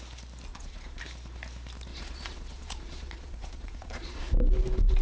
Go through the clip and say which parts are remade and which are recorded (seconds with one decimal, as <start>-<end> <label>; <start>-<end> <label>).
0.0-0.5 recorded; 0.5-1.0 remade; 1.0-1.9 recorded; 1.9-4.2 remade; 4.2-5.0 recorded